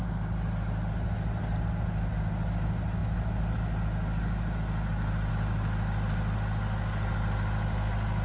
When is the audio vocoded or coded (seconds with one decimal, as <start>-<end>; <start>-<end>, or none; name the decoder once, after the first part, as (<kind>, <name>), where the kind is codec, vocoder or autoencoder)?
none